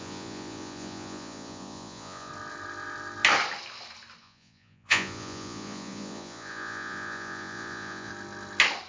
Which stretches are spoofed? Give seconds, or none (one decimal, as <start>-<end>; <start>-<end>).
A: 0.0-2.3; 4.2-8.1